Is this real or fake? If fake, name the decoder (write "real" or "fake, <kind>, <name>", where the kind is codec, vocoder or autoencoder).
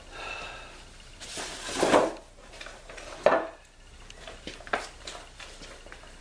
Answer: real